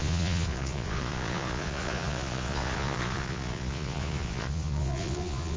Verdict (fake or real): fake